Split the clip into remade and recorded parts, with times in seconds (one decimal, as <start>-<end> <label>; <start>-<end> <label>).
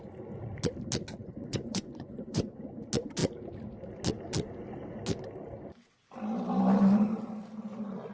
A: 0.0-1.2 recorded; 1.2-2.6 remade; 2.6-8.1 recorded